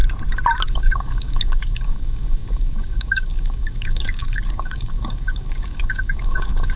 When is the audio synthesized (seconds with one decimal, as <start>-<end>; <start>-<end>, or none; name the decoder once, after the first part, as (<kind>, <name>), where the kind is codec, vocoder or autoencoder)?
0.7-6.8 (codec, DAC)